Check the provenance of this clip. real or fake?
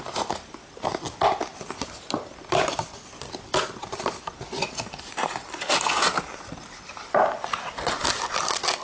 real